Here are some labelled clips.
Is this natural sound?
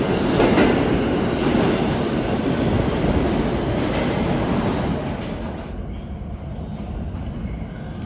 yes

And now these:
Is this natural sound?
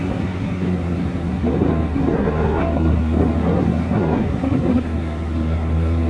no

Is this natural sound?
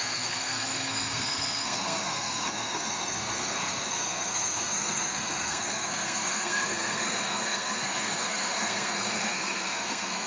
no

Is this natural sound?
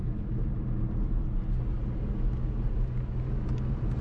yes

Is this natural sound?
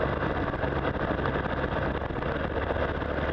yes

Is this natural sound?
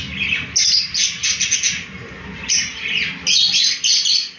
yes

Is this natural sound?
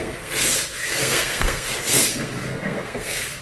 no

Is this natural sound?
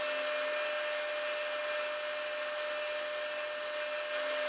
yes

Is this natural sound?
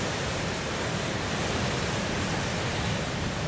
yes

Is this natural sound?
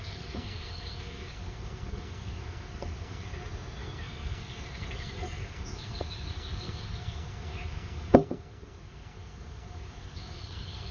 no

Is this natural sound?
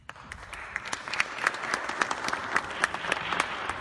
yes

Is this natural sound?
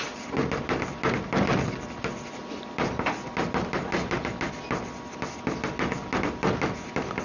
yes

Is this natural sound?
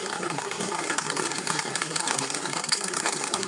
no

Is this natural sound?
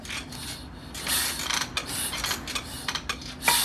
yes